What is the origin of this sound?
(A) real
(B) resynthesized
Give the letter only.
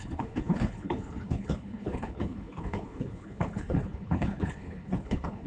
B